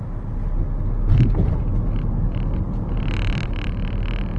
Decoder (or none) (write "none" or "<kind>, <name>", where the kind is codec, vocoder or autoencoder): none